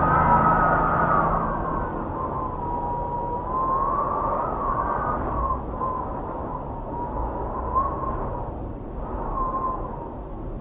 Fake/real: real